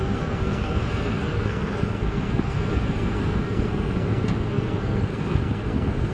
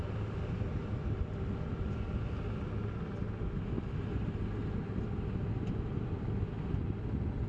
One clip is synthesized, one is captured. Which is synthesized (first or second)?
first